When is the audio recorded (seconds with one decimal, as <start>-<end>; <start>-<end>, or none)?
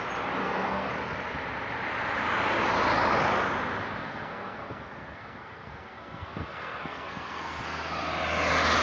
0.0-0.4; 0.9-4.0; 7.9-8.8